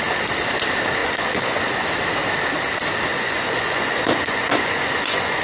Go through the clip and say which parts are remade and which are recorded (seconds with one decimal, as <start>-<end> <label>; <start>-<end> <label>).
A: 0.0-1.0 recorded; 1.0-1.6 remade; 1.6-3.1 recorded; 3.1-5.4 remade